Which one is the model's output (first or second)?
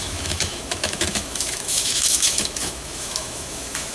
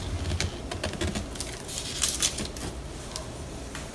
first